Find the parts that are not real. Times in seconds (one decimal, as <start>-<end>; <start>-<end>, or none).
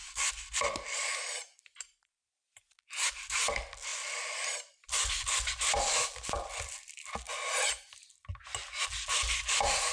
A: 0.0-2.1; 3.9-7.3